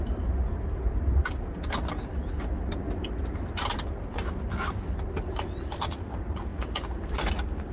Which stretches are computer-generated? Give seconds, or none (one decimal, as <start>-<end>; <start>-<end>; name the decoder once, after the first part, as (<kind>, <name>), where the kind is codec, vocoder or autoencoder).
none